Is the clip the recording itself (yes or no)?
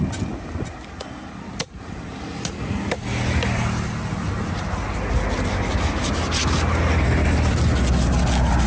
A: yes